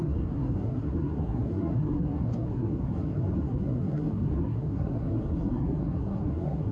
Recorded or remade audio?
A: remade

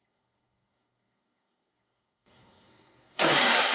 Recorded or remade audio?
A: remade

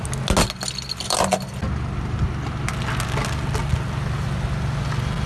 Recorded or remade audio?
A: recorded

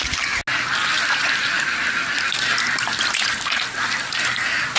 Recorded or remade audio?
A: recorded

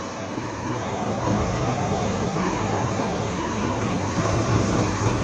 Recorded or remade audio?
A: remade